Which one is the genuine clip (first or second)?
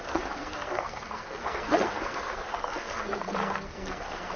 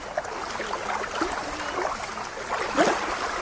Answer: second